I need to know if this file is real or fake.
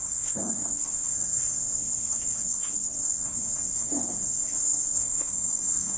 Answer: fake